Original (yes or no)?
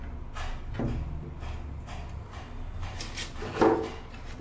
yes